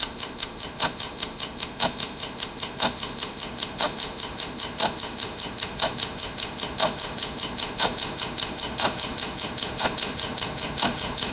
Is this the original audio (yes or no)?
no